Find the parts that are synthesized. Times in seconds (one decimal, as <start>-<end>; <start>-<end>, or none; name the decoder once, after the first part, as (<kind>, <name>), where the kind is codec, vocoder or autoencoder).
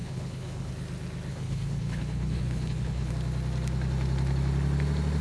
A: 0.0-0.7 (codec, HILCodec); 1.3-3.1